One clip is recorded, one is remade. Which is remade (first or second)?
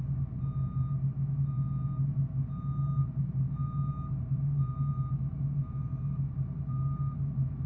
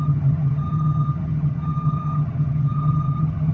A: second